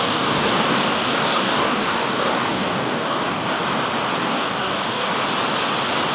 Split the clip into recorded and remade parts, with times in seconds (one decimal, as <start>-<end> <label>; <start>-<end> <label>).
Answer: 0.0-3.6 remade; 3.6-4.2 recorded; 4.2-5.1 remade; 5.1-6.1 recorded